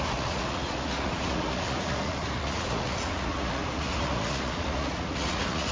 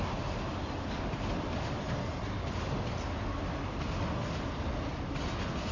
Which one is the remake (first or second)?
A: first